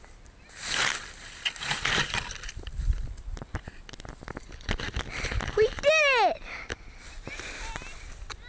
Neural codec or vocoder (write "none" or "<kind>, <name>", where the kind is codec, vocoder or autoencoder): none